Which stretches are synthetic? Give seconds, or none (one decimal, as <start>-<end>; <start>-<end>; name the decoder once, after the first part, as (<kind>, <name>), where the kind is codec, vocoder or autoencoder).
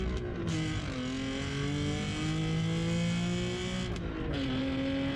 none